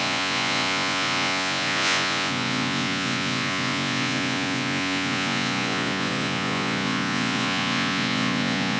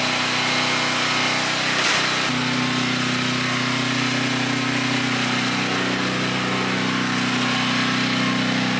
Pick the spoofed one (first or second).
first